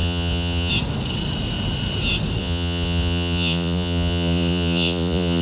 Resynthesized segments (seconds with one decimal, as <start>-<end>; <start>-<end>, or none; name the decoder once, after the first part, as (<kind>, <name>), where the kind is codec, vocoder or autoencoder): 0.0-0.7 (vocoder, Vocos); 2.4-5.4